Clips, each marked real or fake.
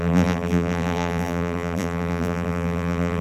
fake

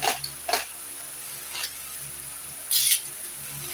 fake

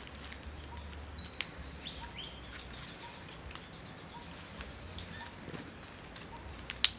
real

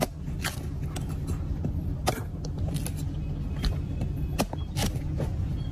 real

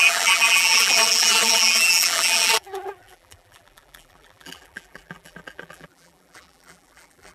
fake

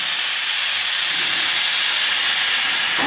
real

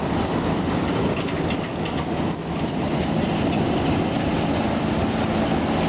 real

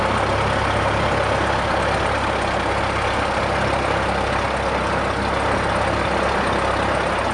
real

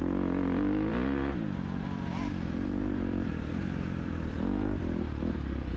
fake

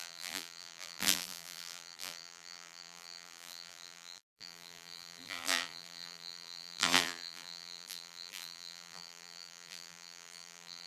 fake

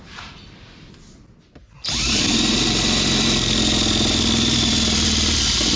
real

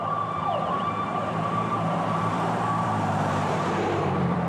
fake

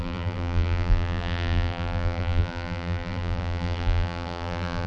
fake